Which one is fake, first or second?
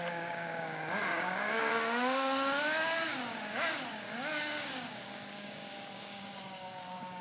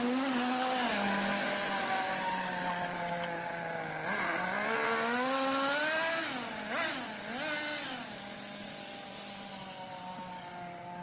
first